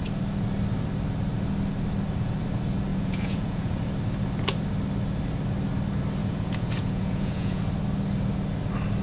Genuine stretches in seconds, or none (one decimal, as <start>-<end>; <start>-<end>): 0.0-2.9; 3.8-6.2; 7.6-9.0